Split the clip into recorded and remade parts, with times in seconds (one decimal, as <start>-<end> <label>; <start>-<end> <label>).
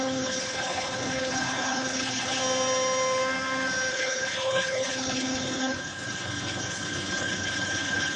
0.0-2.4 remade; 2.4-3.9 recorded; 3.9-8.2 remade